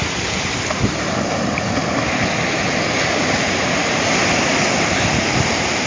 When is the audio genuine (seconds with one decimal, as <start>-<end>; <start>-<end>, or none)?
0.0-3.5; 4.2-4.9